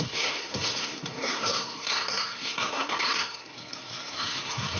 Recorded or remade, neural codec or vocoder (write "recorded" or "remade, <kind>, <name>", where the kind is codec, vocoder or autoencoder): remade, codec, SNAC